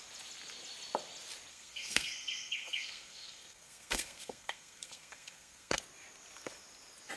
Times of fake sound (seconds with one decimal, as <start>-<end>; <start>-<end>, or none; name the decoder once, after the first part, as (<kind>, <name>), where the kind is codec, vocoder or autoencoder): 1.5-5.8 (codec, SNAC)